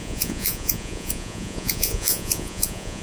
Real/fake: fake